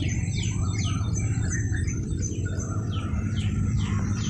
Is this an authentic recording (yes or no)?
no